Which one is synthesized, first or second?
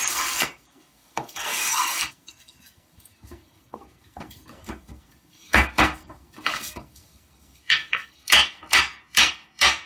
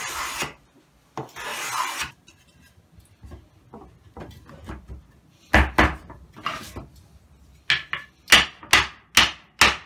first